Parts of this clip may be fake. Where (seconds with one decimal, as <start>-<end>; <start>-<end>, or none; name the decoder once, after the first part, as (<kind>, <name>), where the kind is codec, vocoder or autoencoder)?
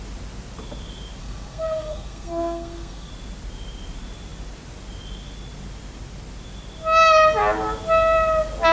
1.2-3.1 (codec, SNAC)